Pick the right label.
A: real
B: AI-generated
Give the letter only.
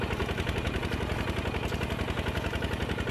A